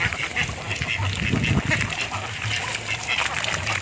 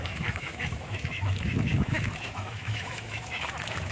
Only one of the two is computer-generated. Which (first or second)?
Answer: second